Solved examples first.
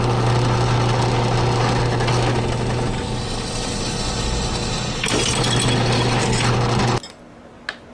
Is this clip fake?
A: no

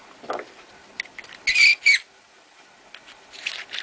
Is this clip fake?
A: no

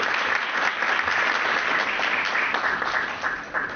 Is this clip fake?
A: no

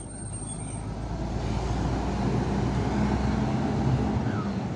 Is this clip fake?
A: no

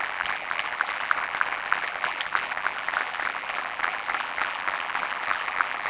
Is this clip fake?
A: yes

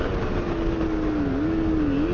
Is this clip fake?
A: no